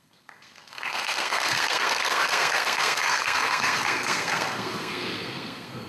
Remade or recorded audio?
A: remade